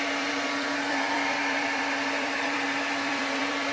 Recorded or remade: remade